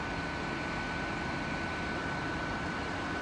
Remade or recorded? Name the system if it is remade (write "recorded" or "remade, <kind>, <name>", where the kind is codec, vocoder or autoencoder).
recorded